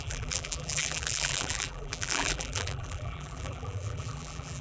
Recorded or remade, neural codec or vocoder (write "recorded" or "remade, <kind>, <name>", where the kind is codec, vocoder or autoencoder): remade, vocoder, BigVGAN v2